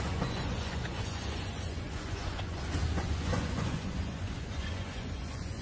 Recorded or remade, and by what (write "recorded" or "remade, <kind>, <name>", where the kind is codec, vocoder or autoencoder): remade, vocoder, Vocos